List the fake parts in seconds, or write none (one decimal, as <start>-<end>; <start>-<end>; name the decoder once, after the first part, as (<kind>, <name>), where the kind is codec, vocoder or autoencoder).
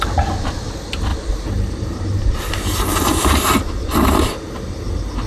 1.1-4.3 (vocoder, BigVGAN v2)